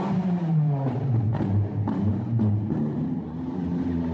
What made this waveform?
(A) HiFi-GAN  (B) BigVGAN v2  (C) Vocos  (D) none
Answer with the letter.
B